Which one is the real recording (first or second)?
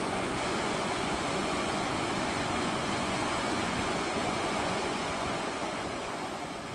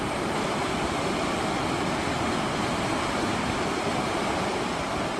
second